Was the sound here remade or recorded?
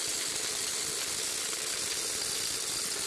recorded